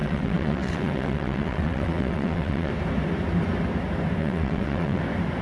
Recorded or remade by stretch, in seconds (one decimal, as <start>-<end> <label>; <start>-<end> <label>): 0.0-2.7 remade; 2.7-4.2 recorded; 4.2-5.0 remade; 5.0-5.4 recorded